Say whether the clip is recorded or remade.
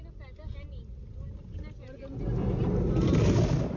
recorded